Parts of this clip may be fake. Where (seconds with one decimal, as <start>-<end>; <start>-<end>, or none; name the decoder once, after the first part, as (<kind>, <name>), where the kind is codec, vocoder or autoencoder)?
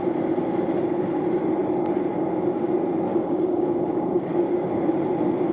3.1-4.8 (codec, DAC)